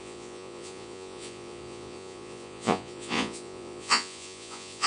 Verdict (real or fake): fake